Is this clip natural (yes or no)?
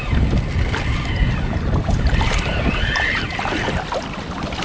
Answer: yes